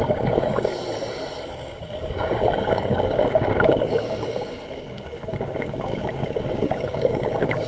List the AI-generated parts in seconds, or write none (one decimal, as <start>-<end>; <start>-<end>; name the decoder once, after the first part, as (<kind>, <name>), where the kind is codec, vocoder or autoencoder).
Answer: 0.0-0.7 (codec, DAC); 1.5-7.7